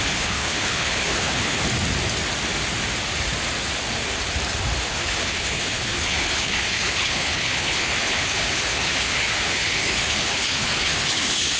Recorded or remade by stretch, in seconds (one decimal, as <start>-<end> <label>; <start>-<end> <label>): 0.0-1.6 remade; 1.6-4.9 recorded; 4.9-11.6 remade